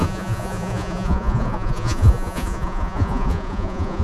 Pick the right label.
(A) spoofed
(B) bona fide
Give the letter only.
A